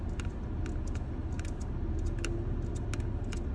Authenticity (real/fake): real